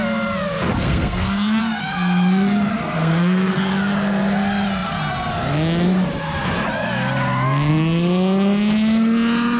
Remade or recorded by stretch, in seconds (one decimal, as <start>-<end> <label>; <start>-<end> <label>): 0.0-0.8 recorded; 0.8-1.6 remade; 1.6-2.7 recorded; 2.7-3.7 remade; 3.7-9.6 recorded

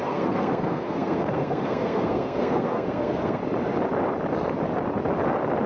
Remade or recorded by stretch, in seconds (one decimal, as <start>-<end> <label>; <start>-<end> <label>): 0.0-3.4 remade; 3.4-5.7 recorded

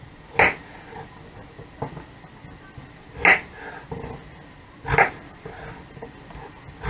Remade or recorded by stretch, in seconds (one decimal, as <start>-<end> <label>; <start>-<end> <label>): 0.0-6.9 recorded

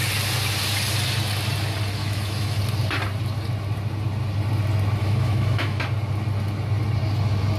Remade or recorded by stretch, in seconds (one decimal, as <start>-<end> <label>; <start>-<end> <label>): 0.0-2.0 recorded; 2.0-2.6 remade; 2.6-5.0 recorded; 5.0-5.8 remade; 5.8-7.6 recorded

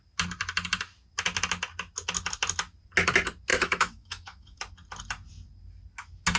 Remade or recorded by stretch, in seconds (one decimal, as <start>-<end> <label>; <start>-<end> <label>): 0.0-3.5 recorded; 3.5-4.6 remade; 4.6-6.4 recorded

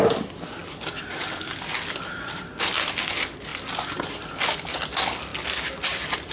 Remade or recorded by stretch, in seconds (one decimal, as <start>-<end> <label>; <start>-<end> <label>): 0.0-6.3 recorded